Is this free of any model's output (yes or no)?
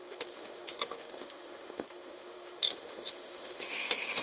no